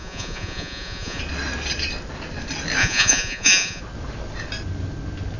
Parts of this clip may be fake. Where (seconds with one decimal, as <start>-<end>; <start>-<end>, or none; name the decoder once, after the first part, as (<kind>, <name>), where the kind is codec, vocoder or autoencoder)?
0.0-1.2 (vocoder, Vocos); 2.8-3.8